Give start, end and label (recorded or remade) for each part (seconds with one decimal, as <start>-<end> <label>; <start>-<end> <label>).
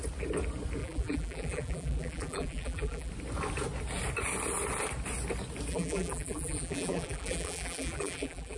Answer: 0.0-0.8 recorded; 0.8-3.1 remade; 3.1-5.7 recorded; 5.7-8.6 remade